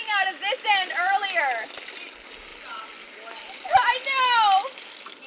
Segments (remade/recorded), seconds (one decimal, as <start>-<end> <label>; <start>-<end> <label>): 0.0-5.3 recorded